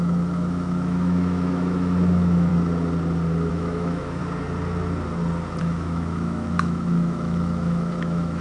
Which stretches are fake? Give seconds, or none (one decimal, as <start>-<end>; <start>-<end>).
0.0-2.5; 3.5-4.2; 5.6-8.4

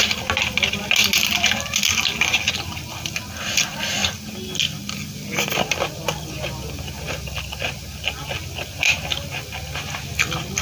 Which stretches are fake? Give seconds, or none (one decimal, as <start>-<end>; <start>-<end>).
none